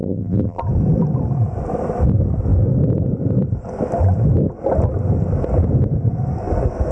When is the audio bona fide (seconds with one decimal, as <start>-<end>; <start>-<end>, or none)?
0.6-6.9